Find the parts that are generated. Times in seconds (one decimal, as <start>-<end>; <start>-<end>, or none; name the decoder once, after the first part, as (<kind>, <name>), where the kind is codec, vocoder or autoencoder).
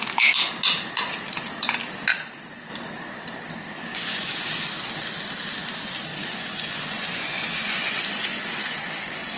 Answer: 3.9-4.5 (vocoder, Vocos); 6.1-9.4